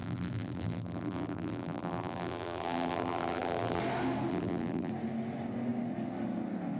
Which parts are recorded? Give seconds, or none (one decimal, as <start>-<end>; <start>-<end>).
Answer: 3.8-4.3; 4.9-6.8